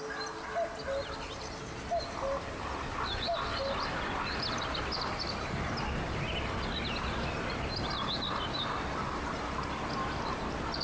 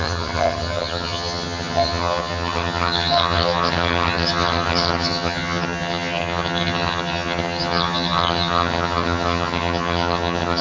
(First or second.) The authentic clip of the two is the first